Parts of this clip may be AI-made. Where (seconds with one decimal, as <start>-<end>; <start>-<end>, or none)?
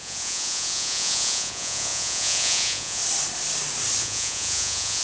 0.0-3.0; 4.0-5.0